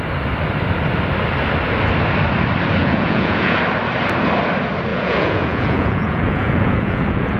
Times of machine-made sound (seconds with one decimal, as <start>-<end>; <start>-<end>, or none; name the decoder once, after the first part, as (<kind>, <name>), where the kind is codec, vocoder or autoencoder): 2.8-3.6 (vocoder, Vocos); 4.9-7.4